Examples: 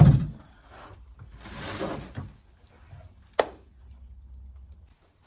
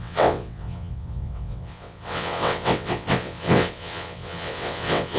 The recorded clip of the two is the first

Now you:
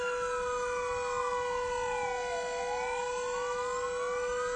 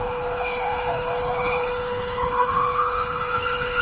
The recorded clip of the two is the first